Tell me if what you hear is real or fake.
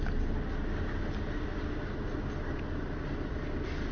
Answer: real